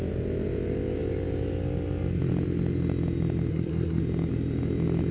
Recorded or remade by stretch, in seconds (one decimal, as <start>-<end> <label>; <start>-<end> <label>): 0.0-3.5 recorded; 3.5-4.0 remade; 4.0-5.1 recorded